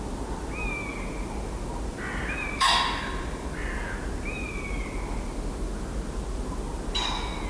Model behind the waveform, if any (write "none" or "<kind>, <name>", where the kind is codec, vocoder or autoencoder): none